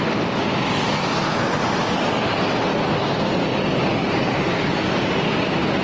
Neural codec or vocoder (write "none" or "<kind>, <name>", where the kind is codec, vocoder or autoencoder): none